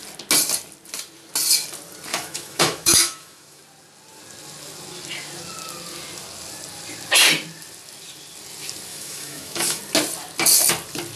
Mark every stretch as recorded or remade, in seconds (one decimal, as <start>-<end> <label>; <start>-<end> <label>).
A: 0.0-2.1 recorded; 2.1-3.6 remade; 3.6-8.9 recorded; 8.9-9.8 remade; 9.8-11.2 recorded